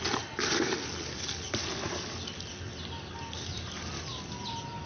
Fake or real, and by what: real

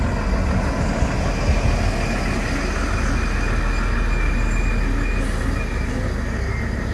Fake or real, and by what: real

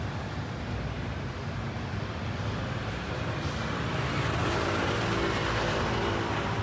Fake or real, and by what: real